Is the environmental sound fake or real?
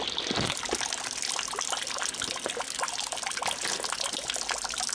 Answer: real